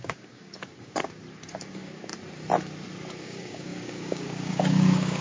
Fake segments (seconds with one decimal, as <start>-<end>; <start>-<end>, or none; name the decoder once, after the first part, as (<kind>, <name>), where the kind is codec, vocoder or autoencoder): 0.0-1.2 (codec, DAC); 1.7-2.1; 3.2-5.2